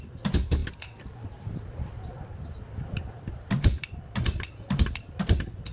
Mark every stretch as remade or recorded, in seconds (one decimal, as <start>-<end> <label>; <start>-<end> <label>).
0.0-5.7 remade